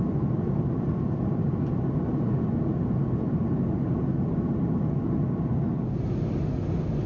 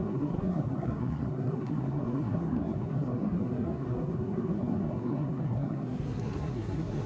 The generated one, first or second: second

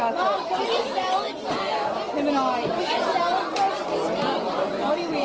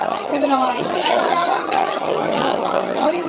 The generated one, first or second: second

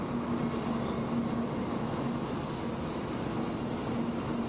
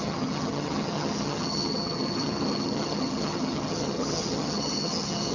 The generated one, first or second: second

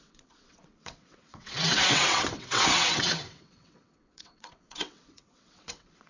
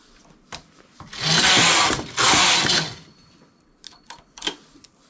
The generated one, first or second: first